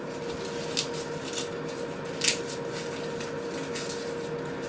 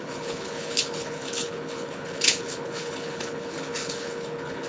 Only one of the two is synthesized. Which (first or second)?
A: second